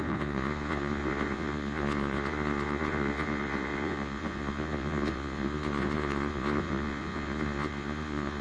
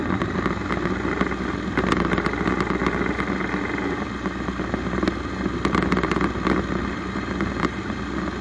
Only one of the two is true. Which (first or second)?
second